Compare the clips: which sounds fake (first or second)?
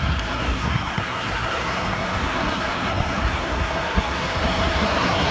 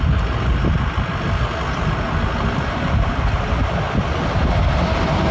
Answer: first